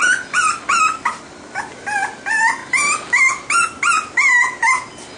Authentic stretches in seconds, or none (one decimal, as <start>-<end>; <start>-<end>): 0.0-5.2